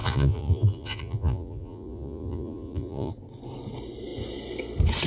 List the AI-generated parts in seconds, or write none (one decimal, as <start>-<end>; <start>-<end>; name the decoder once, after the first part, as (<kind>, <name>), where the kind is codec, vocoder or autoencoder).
0.0-3.1 (vocoder, Vocos)